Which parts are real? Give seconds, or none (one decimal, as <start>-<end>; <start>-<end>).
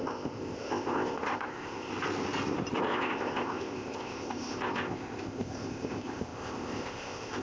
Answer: 1.9-2.8